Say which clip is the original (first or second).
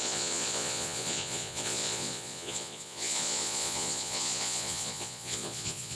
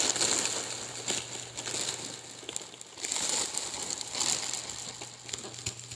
second